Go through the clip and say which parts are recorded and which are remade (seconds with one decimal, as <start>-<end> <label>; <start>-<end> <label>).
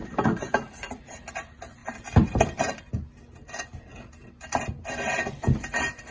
0.0-1.0 remade; 1.0-1.8 recorded; 1.8-2.9 remade; 2.9-6.1 recorded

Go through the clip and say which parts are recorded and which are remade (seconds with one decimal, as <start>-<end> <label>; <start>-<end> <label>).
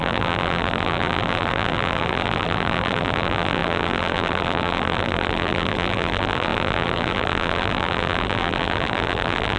0.0-9.6 remade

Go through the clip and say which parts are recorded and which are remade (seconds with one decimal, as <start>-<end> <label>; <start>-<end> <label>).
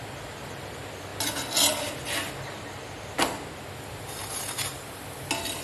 0.0-5.6 recorded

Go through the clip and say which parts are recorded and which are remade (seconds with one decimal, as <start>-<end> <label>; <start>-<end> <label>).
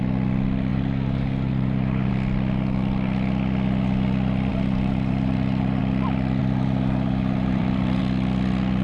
0.0-0.7 recorded; 0.7-2.1 remade; 2.1-4.5 recorded; 4.5-5.8 remade; 5.8-6.4 recorded; 6.4-8.0 remade; 8.0-8.8 recorded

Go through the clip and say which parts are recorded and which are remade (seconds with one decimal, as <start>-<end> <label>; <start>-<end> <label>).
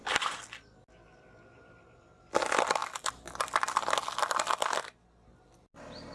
0.0-6.1 recorded